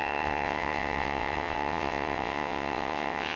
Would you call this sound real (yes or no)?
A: no